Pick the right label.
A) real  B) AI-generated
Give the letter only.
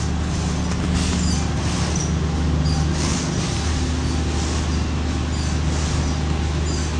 A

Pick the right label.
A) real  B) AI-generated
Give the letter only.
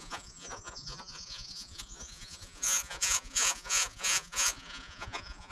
B